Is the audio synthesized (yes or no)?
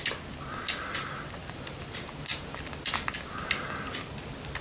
no